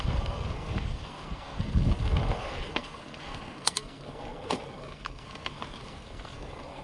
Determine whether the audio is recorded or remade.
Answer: remade